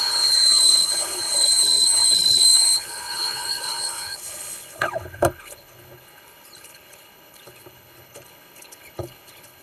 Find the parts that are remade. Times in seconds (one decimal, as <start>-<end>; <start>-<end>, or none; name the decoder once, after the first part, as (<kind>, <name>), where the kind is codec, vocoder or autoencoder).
0.0-9.6 (codec, HILCodec)